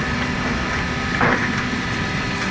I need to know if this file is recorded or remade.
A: recorded